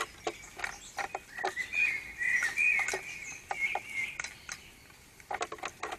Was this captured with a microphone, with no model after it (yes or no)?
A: yes